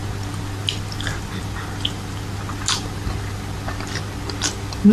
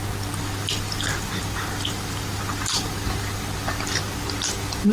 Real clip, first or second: first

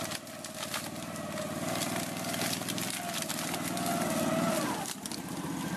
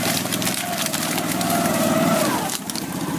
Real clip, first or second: first